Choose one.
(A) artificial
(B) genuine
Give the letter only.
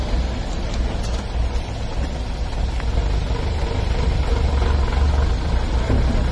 B